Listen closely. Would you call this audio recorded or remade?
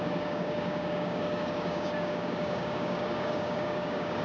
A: remade